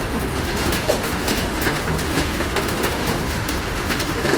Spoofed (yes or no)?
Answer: yes